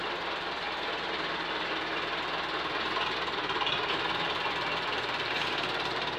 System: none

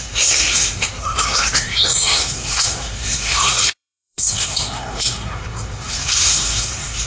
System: codec, SNAC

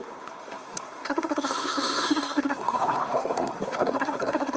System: codec, SNAC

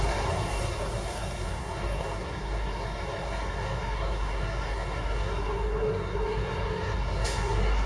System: codec, SNAC